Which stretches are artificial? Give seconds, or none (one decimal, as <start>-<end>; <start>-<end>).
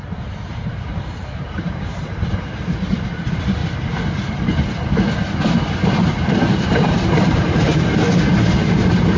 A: 0.0-3.6; 5.6-9.2